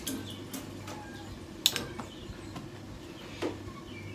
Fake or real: real